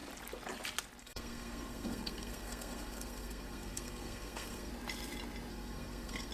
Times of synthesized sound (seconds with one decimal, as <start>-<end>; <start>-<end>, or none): 1.0-4.7; 5.5-6.3